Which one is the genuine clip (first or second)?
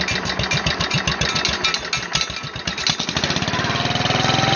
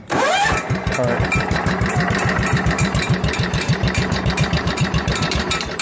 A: first